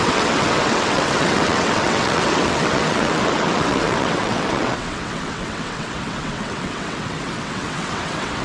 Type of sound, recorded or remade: remade